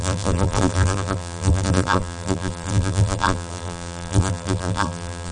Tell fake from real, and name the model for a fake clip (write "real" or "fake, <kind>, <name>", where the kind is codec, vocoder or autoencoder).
fake, vocoder, BigVGAN v2